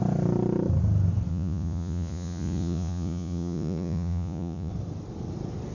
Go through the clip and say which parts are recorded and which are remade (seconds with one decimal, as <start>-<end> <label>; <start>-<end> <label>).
0.0-1.3 recorded; 1.3-4.7 remade; 4.7-5.7 recorded